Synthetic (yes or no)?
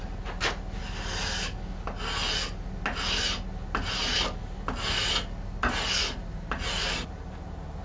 no